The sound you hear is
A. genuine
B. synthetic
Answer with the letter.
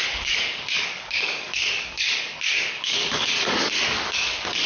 B